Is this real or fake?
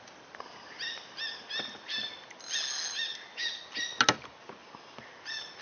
real